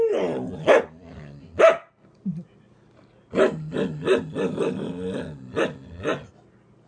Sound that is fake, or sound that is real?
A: real